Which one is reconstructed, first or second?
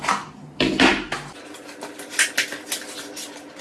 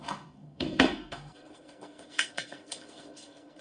second